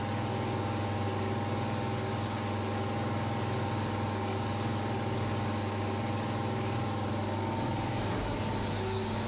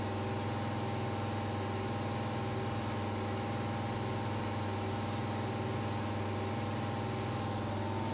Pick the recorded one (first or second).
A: second